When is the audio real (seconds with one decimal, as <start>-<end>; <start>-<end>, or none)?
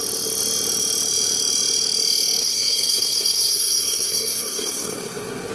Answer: 0.0-2.4